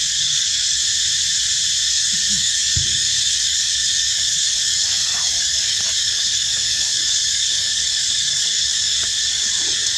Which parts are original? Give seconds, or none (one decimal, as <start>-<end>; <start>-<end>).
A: 0.8-1.9